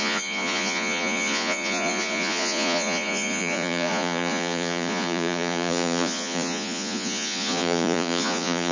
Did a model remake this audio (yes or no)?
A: yes